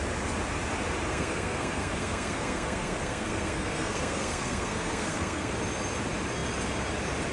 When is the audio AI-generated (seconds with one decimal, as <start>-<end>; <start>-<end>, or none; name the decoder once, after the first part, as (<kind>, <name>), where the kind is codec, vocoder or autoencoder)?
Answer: 1.1-5.5 (codec, SNAC)